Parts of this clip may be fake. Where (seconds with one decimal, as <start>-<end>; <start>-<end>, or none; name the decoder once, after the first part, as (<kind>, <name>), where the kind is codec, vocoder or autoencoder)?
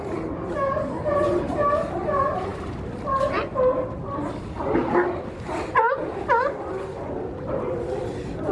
none